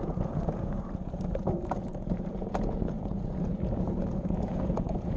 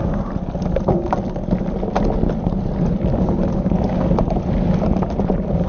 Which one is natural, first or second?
second